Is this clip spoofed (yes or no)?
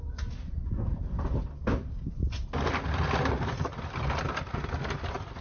no